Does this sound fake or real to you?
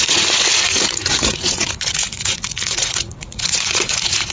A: fake